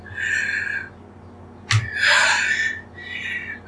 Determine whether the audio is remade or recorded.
recorded